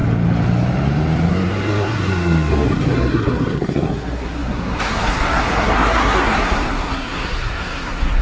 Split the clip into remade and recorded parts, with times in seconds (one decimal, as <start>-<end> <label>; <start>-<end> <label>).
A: 0.0-1.3 recorded; 1.3-8.2 remade

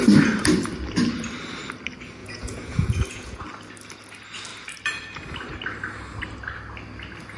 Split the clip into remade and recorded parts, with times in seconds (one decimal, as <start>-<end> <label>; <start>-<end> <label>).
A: 0.0-2.2 recorded; 2.2-3.4 remade; 3.4-7.4 recorded

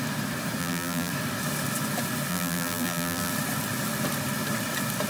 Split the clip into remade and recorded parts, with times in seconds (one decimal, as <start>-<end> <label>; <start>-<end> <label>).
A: 0.0-0.6 recorded; 0.6-1.1 remade; 1.1-2.3 recorded; 2.3-3.3 remade; 3.3-5.1 recorded

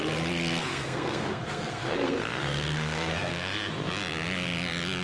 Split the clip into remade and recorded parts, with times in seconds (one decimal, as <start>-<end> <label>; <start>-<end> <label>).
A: 0.0-0.7 recorded; 0.7-3.7 remade; 3.7-5.0 recorded

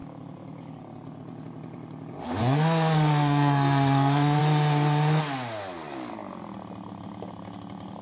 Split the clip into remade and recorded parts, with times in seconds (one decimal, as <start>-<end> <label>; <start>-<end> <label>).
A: 0.0-2.4 recorded; 2.4-4.4 remade; 4.4-8.0 recorded

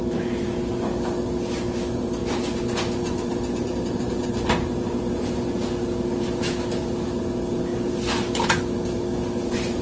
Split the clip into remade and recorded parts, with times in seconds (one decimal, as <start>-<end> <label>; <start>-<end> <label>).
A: 0.0-9.8 recorded